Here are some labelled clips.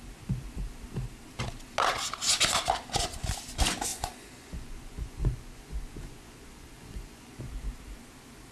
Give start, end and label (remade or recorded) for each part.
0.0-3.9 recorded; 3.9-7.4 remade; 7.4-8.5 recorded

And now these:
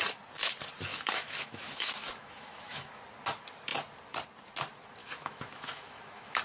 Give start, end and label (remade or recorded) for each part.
0.0-0.9 recorded; 0.9-3.0 remade; 3.0-5.0 recorded; 5.0-6.4 remade

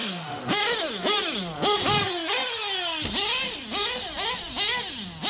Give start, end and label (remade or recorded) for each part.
0.0-0.6 remade; 0.6-5.3 recorded

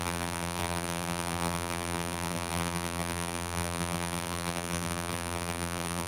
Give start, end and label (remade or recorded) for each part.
0.0-6.1 remade

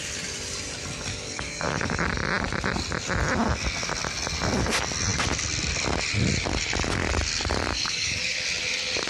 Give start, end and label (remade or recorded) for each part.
0.0-1.1 recorded; 1.1-2.1 remade; 2.1-7.7 recorded; 7.7-8.4 remade; 8.4-9.1 recorded